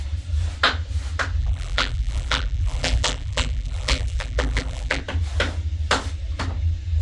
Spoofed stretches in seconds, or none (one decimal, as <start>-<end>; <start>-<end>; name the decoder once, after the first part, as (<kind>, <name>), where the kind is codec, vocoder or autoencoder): 1.4-5.0 (vocoder, BigVGAN v2)